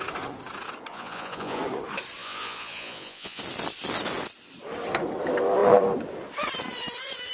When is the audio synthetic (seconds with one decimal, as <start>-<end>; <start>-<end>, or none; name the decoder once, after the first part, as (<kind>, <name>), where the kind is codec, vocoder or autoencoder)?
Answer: 0.9-1.6 (vocoder, Vocos); 2.2-3.4